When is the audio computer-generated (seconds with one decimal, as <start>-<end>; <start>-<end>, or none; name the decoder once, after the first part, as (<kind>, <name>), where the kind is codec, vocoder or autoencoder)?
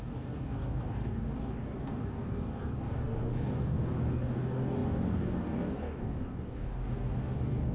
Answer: 0.0-7.7 (codec, DAC)